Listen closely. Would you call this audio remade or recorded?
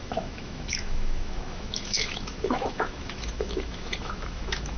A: remade